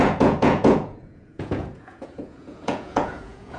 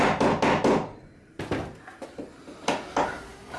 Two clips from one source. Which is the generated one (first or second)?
first